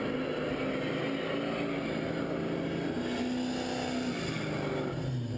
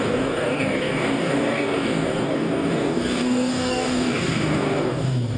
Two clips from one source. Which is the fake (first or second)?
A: second